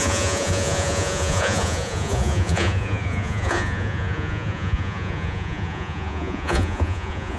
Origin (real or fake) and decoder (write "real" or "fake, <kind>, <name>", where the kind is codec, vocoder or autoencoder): fake, vocoder, Vocos